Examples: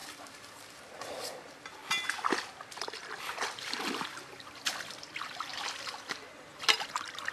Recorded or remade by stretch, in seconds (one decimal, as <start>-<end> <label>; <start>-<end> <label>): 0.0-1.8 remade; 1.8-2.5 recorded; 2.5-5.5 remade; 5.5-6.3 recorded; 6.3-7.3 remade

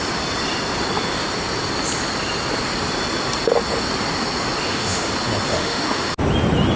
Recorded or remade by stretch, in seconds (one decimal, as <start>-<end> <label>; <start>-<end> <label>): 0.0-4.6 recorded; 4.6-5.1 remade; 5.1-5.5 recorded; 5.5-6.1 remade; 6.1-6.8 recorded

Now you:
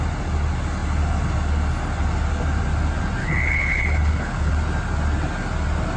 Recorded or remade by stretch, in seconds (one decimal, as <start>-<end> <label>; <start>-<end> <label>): 0.0-3.2 recorded; 3.2-4.5 remade; 4.5-6.0 recorded

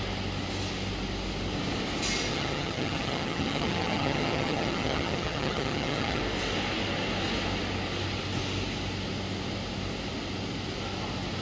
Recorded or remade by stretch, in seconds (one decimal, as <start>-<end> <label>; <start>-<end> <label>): 0.0-2.3 recorded; 2.3-6.2 remade; 6.2-11.4 recorded

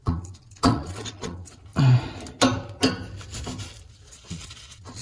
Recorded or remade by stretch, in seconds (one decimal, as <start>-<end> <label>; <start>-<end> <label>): 0.0-1.7 remade; 1.7-3.9 recorded; 3.9-5.0 remade

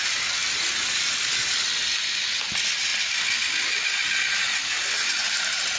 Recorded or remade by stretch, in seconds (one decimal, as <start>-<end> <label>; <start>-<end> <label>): 0.0-5.8 recorded